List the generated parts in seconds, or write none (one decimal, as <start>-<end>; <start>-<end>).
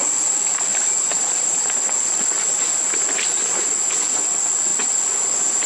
none